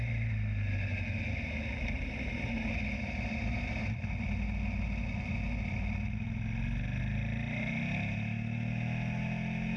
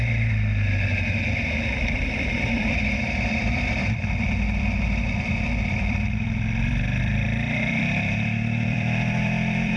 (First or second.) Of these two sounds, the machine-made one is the second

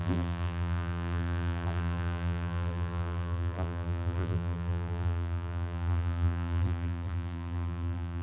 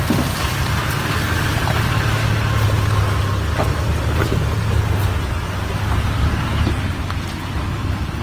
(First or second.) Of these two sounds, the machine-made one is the first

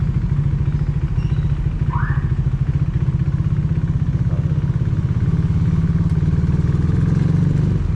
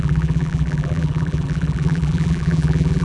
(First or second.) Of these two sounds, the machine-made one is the second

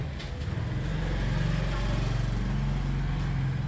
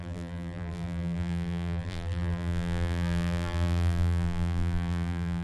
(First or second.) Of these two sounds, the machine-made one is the second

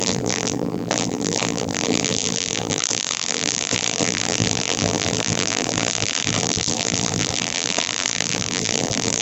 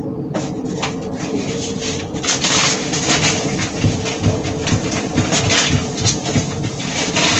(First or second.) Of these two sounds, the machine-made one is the first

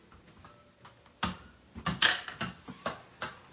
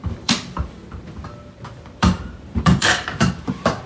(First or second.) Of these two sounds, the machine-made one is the second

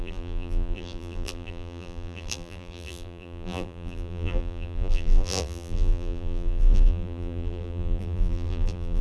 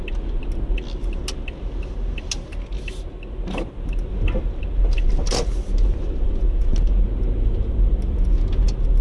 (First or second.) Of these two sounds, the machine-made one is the first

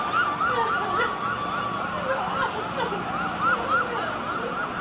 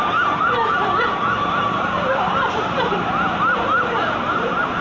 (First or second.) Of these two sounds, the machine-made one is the second